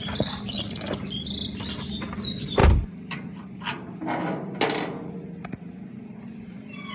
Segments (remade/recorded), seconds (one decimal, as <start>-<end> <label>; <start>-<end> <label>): 0.0-6.9 recorded